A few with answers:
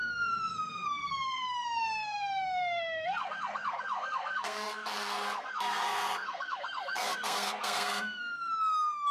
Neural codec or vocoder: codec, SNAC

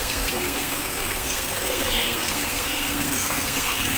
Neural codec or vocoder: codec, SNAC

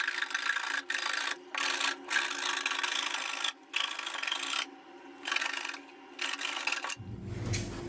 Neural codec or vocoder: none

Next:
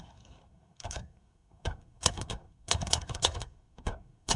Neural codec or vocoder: codec, SNAC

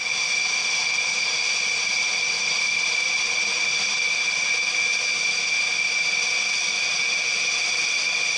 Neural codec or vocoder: none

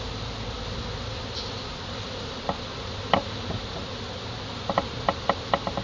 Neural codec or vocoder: none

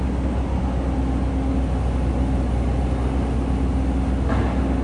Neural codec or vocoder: none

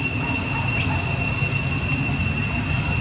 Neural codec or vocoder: none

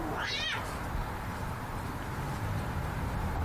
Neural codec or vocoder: vocoder, BigVGAN v2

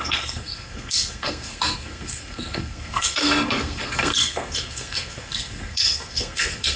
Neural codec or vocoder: codec, SNAC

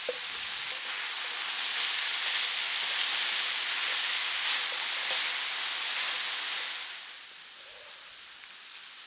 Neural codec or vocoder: none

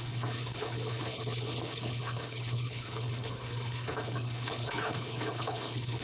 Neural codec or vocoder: codec, HILCodec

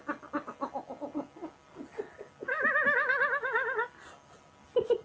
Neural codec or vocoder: none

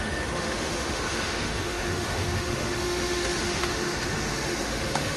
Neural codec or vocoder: autoencoder, DAC-VAE